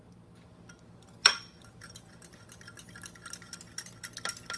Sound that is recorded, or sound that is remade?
recorded